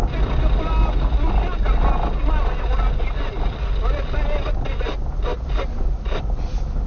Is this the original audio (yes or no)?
yes